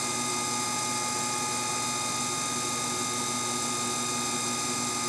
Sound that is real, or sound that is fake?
real